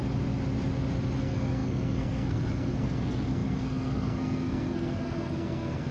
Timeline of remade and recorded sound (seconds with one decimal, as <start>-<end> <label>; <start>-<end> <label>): 0.0-1.2 recorded; 1.2-5.9 remade